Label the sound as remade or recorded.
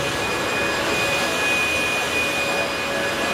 recorded